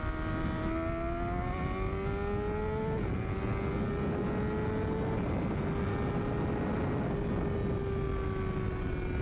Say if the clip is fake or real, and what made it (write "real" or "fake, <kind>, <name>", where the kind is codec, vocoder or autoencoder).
real